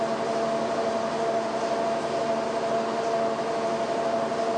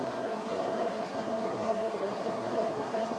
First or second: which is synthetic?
second